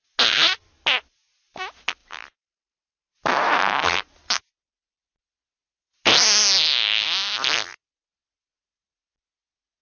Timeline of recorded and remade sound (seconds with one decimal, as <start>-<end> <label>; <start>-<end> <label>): 0.0-2.0 recorded; 2.0-4.4 remade; 4.4-9.8 recorded